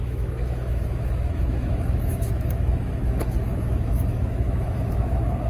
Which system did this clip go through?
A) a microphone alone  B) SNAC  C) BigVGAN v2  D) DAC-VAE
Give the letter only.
D